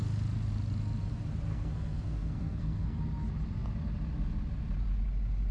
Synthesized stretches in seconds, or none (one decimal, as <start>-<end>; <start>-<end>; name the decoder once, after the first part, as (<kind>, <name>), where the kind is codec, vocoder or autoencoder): 1.5-3.0 (codec, SNAC)